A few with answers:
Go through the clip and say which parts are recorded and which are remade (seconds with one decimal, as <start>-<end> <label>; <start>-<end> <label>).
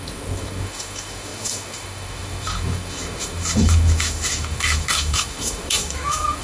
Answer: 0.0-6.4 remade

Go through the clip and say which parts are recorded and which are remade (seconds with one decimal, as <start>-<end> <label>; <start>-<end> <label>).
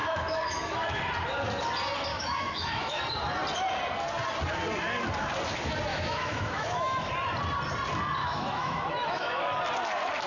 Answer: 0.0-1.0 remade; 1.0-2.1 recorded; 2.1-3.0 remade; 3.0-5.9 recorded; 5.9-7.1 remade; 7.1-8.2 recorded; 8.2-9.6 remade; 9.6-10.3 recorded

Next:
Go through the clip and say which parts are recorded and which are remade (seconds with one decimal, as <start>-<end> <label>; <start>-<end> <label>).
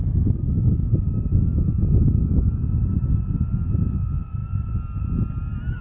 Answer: 0.0-1.7 remade; 1.7-5.8 recorded